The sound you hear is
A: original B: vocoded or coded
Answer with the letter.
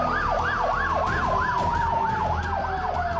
A